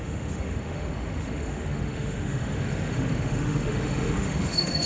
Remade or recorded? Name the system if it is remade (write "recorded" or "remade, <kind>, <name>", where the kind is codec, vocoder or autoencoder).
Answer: remade, autoencoder, DAC-VAE